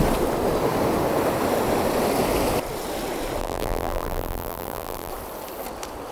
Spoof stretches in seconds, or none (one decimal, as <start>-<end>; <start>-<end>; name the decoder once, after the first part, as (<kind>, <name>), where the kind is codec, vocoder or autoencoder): 3.4-5.1 (vocoder, BigVGAN v2)